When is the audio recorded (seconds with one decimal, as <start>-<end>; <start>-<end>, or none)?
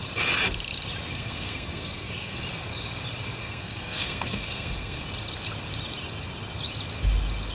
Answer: 0.0-1.1; 2.4-3.4; 5.0-7.5